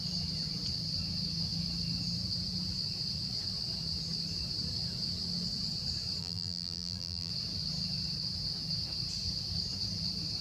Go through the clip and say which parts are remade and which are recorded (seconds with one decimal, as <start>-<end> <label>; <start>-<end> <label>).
0.0-6.2 recorded; 6.2-7.3 remade; 7.3-10.4 recorded